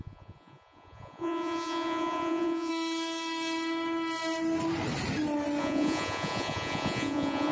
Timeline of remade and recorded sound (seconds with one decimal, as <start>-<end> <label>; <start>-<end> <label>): 0.0-2.7 remade; 2.7-5.6 recorded; 5.6-7.5 remade